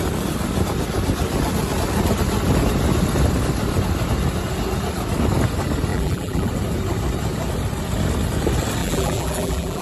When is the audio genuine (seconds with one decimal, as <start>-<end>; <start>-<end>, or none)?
0.0-5.9; 6.5-8.8